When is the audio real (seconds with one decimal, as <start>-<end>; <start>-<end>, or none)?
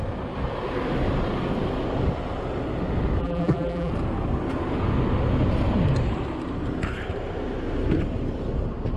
0.0-3.2; 3.9-9.0